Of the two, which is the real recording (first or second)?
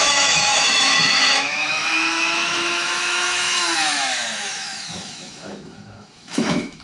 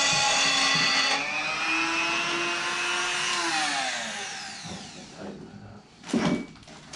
second